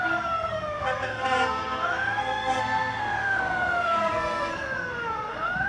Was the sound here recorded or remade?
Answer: remade